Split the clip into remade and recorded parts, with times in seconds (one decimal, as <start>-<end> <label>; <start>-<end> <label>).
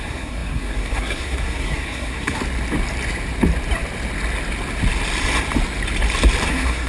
0.0-2.4 remade; 2.4-6.5 recorded; 6.5-6.9 remade